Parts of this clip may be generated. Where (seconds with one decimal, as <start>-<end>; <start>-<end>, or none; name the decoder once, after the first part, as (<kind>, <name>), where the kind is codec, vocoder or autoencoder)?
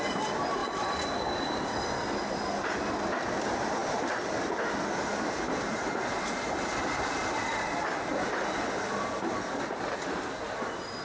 none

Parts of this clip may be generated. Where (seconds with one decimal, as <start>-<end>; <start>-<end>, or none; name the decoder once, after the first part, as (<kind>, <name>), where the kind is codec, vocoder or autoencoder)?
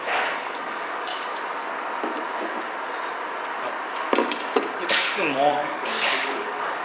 0.0-1.1 (codec, DAC); 4.9-6.8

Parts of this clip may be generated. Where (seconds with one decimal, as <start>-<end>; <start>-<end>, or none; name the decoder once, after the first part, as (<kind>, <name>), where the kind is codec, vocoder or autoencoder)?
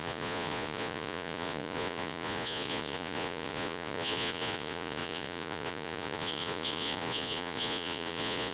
0.0-8.5 (vocoder, Vocos)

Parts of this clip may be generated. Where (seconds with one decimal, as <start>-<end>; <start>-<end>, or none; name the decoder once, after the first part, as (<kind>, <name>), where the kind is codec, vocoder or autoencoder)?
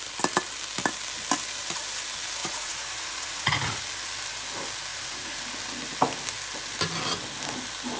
2.4-3.8 (vocoder, Vocos); 4.9-5.4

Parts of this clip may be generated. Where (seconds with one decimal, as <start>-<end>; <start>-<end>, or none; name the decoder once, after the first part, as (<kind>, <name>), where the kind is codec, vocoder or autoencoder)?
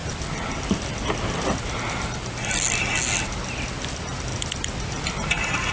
none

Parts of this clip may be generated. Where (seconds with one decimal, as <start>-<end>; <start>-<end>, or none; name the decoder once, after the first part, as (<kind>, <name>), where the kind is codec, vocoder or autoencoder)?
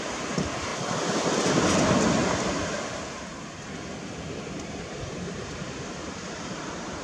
0.0-0.7 (vocoder, BigVGAN v2); 4.8-7.0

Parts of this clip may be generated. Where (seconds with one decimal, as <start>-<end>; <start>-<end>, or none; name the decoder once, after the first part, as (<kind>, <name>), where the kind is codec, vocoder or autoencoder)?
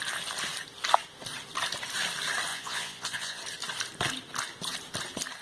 2.5-3.4 (vocoder, Vocos)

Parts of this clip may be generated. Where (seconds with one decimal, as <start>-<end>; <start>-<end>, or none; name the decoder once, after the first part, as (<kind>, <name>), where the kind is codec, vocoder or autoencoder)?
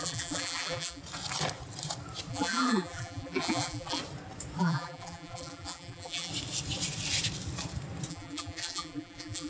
0.0-1.0 (vocoder, BigVGAN v2); 2.3-4.0; 4.6-6.3; 8.1-9.5